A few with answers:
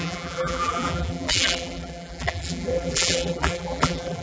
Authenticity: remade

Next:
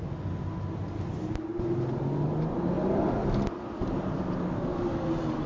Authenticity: recorded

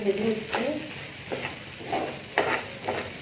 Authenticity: recorded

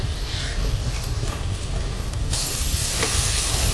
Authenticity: remade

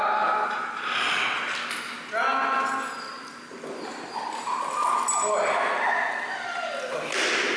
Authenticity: recorded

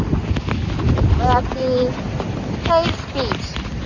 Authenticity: recorded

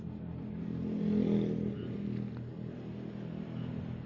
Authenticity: recorded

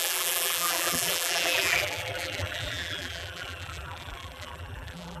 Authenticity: remade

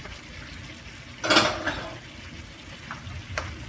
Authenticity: recorded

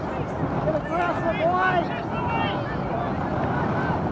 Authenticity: recorded